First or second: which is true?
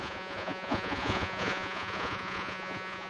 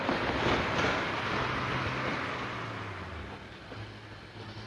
second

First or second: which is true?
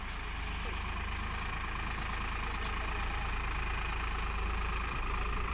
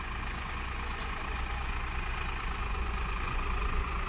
first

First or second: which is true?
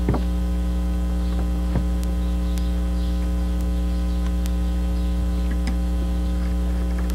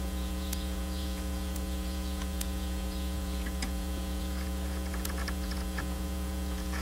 first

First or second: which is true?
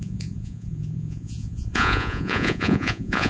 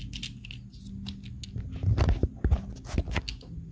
second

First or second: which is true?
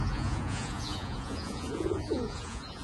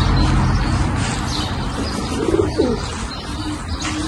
second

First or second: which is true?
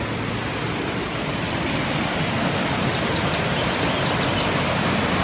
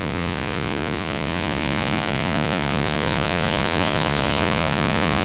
first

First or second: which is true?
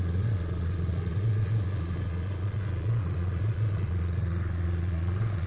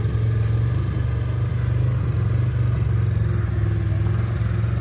second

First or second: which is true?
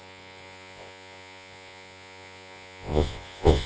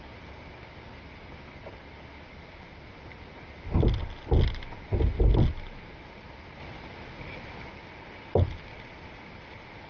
second